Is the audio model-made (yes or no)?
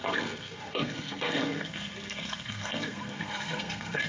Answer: yes